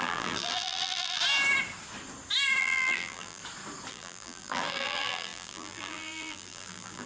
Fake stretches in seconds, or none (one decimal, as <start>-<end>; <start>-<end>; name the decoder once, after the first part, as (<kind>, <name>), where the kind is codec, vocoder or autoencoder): 0.0-1.2 (vocoder, BigVGAN v2); 2.6-3.4; 3.9-7.1